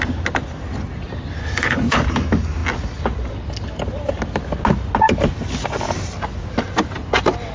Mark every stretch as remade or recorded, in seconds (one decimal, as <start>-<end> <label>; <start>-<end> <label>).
0.0-1.4 recorded; 1.4-2.0 remade; 2.0-7.5 recorded

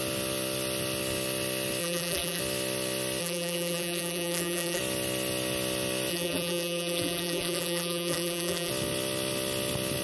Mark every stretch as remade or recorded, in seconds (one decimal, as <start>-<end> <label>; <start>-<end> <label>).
0.0-1.8 recorded; 1.8-2.4 remade; 2.4-3.2 recorded; 3.2-4.8 remade; 4.8-6.1 recorded; 6.1-8.7 remade; 8.7-10.0 recorded

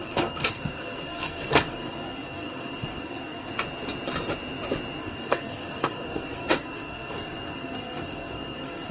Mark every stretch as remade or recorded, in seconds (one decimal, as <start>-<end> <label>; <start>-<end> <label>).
0.0-3.5 remade; 3.5-5.0 recorded; 5.0-8.9 remade

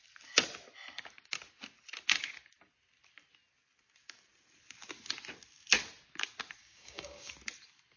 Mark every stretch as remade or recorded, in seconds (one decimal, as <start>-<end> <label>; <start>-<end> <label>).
0.0-6.6 recorded; 6.6-7.3 remade; 7.3-8.0 recorded

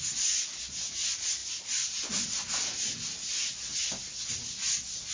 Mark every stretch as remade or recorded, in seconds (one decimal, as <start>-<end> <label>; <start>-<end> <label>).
0.0-5.1 recorded

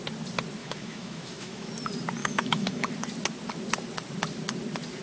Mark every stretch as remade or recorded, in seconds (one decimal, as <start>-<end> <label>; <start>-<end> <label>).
0.0-0.6 recorded; 0.6-1.7 remade; 1.7-2.2 recorded; 2.2-2.9 remade; 2.9-5.0 recorded

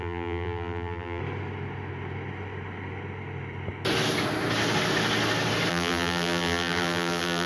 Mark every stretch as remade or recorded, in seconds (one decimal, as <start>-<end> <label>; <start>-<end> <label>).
0.0-1.2 remade; 1.2-5.7 recorded; 5.7-7.5 remade